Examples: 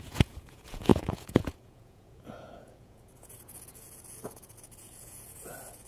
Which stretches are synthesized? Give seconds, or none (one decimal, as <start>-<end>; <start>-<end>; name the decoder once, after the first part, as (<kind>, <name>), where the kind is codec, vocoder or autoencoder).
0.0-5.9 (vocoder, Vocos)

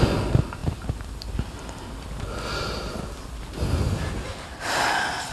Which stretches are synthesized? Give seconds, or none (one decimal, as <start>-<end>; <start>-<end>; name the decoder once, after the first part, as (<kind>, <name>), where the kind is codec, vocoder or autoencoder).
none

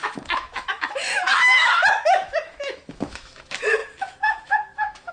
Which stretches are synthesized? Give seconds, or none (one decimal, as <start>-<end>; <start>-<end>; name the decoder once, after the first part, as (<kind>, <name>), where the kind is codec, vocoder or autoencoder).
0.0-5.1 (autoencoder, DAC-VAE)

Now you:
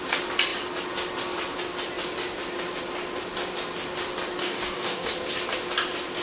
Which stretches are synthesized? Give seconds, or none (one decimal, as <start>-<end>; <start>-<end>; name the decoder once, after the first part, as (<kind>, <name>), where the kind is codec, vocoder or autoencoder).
4.4-5.1 (codec, DAC)